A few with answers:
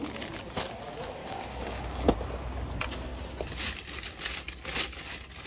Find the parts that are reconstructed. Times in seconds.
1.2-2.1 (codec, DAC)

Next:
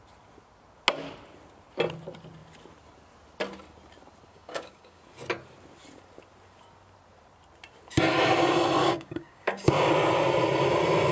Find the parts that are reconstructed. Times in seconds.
4.3-5.0 (codec, DAC); 8.8-9.9

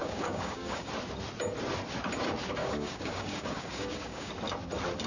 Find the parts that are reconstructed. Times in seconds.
0.0-0.9 (codec, DAC); 2.6-4.3

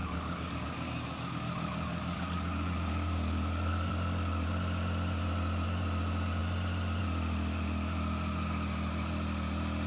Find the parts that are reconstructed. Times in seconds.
0.0-3.9 (codec, DAC)

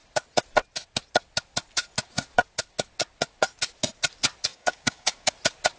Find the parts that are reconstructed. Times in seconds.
4.5-5.3 (codec, DAC)

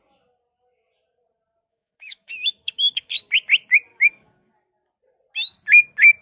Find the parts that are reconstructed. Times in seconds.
1.7-3.1 (codec, DAC); 3.9-4.5